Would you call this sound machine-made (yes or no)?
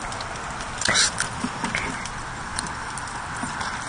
no